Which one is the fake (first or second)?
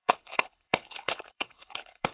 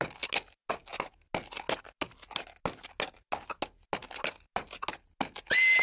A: first